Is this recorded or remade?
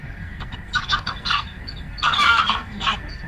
remade